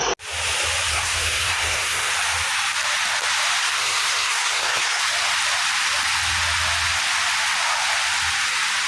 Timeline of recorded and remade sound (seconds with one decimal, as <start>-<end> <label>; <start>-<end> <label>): 0.0-0.9 recorded; 0.9-2.1 remade; 2.1-3.6 recorded; 3.6-5.0 remade; 5.0-8.9 recorded